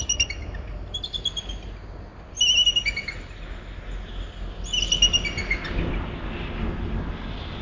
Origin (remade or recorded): recorded